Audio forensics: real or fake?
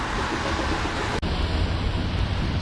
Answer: real